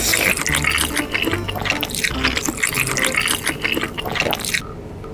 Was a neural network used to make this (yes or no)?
no